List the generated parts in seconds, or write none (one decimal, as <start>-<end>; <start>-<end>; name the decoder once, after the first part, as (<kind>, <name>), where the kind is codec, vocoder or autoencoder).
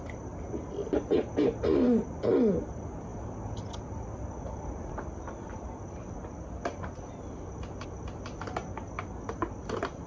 none